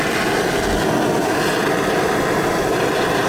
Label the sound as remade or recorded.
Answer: recorded